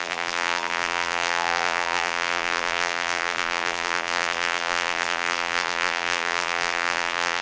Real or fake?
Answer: fake